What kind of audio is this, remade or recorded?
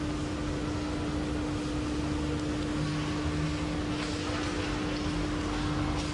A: recorded